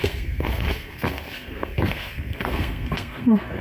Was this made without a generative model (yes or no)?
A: no